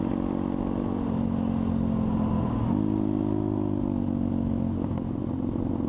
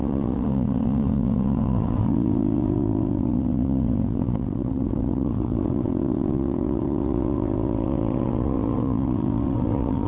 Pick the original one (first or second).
first